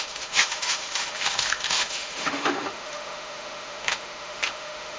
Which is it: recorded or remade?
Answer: remade